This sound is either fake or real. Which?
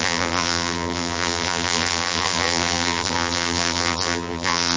fake